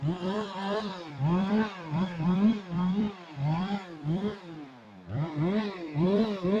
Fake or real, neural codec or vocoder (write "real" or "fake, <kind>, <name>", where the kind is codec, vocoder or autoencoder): fake, vocoder, BigVGAN v2